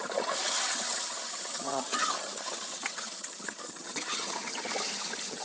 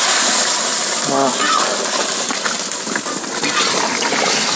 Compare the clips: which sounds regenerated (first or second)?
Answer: first